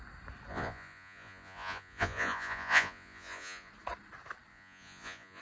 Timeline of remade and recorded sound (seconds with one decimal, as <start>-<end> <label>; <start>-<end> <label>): 0.0-0.5 recorded; 0.5-3.7 remade; 3.7-4.5 recorded; 4.5-5.4 remade